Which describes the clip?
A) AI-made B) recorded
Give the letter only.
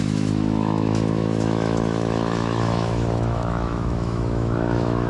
A